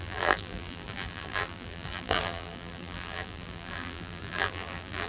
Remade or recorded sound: remade